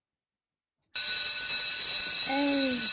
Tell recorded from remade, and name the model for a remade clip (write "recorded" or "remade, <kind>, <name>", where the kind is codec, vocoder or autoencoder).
recorded